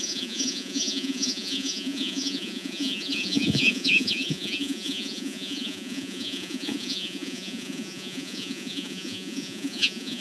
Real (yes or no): no